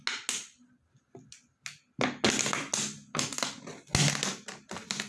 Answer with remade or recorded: recorded